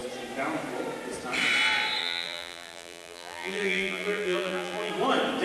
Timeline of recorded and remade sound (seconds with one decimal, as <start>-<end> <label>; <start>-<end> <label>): 0.0-2.0 recorded; 2.0-4.9 remade; 4.9-5.4 recorded